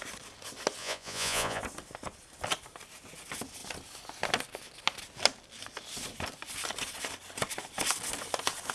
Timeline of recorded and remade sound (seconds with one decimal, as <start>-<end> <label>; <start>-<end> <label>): 0.0-0.8 recorded; 0.8-1.6 remade; 1.6-8.7 recorded

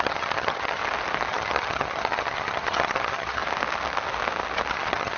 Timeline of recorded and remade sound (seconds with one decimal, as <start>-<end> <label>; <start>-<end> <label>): 0.0-0.8 remade; 0.8-1.3 recorded; 1.3-3.4 remade; 3.4-4.7 recorded; 4.7-5.2 remade

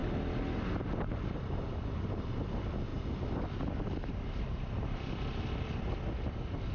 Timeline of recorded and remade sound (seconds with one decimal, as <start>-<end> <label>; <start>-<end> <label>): 0.0-6.7 recorded

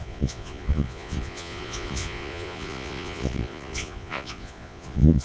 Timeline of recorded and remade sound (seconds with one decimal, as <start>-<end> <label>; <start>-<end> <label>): 0.0-5.2 remade

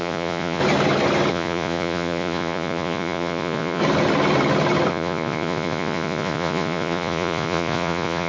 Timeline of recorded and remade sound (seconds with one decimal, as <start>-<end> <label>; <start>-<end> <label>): 0.0-0.6 remade; 0.6-1.3 recorded; 1.3-3.8 remade; 3.8-4.9 recorded; 4.9-8.3 remade

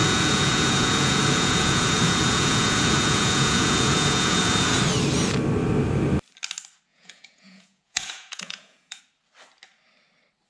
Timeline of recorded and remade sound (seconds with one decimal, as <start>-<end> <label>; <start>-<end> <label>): 0.0-4.8 remade; 4.8-6.9 recorded; 6.9-9.0 remade; 9.0-10.5 recorded

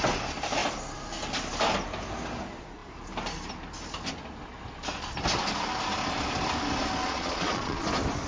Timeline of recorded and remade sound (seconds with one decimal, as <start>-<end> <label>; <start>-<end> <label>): 0.0-7.0 recorded; 7.0-7.8 remade; 7.8-8.3 recorded

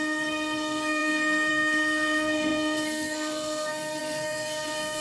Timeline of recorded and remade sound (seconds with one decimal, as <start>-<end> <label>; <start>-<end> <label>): 0.0-5.0 remade